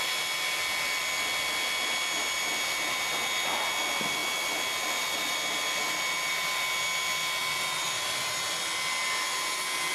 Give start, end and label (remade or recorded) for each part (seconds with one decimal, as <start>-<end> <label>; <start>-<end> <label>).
0.0-9.9 recorded